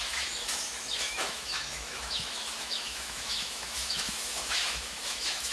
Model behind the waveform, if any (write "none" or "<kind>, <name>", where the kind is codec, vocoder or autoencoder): autoencoder, DAC-VAE